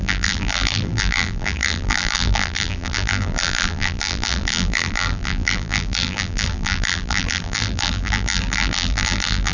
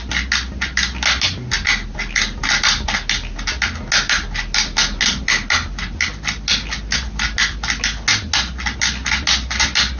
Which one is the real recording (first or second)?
second